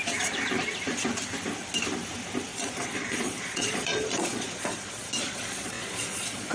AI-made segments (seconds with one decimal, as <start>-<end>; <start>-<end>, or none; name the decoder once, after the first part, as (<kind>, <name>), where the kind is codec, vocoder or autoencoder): 2.5-6.5 (vocoder, Vocos)